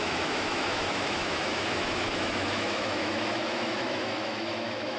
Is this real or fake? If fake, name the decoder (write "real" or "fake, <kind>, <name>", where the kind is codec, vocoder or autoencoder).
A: fake, autoencoder, DAC-VAE